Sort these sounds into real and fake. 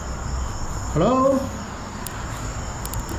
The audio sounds real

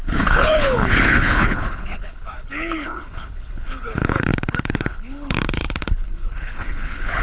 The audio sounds fake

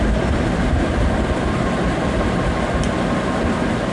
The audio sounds real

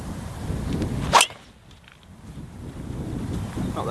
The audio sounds real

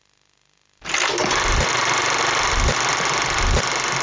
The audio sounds real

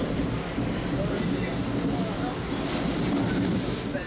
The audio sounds real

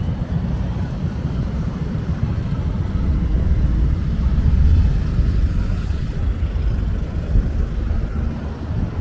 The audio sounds real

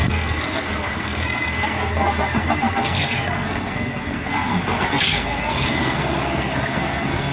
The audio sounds fake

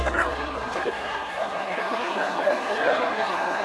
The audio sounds fake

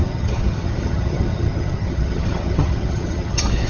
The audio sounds fake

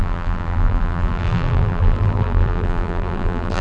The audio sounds fake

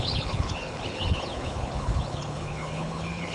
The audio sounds fake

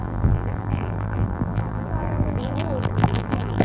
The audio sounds fake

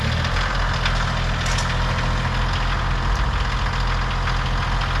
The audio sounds real